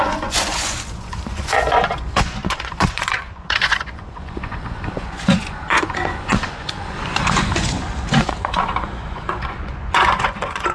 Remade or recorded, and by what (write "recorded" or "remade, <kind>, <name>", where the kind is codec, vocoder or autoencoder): remade, vocoder, Vocos